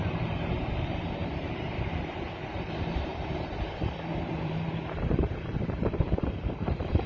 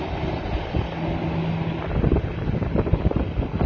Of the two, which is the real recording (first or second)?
second